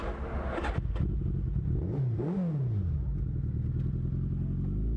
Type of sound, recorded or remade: recorded